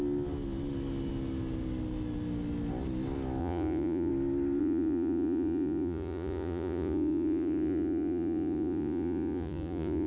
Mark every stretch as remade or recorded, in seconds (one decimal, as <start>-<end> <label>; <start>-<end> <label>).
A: 0.0-3.4 recorded; 3.4-4.1 remade; 4.1-4.6 recorded; 4.6-10.1 remade